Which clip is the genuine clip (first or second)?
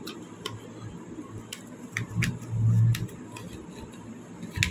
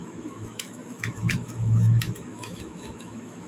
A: first